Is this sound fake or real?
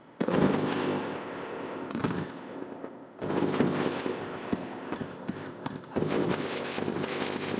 fake